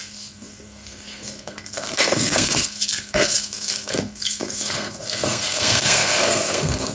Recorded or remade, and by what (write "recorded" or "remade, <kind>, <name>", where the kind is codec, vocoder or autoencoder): remade, codec, SNAC